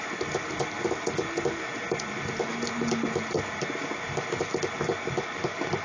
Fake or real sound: real